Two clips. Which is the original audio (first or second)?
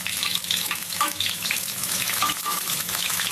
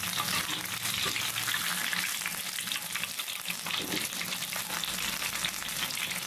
second